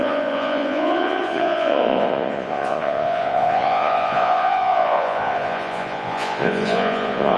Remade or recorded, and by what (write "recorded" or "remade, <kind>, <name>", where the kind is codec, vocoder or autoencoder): remade, vocoder, Vocos